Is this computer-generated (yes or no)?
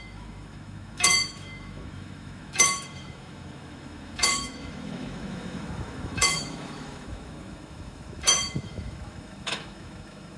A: yes